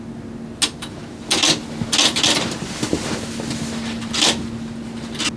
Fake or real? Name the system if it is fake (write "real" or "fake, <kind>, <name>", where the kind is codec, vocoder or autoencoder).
real